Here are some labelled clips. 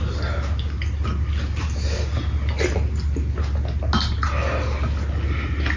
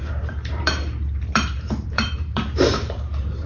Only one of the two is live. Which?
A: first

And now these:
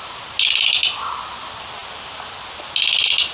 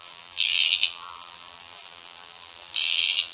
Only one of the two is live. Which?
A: first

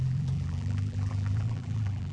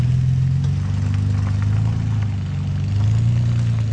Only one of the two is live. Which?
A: second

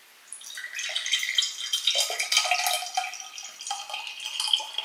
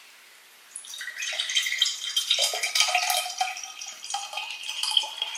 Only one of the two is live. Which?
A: first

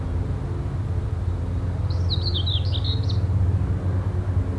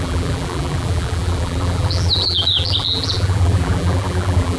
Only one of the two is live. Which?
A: first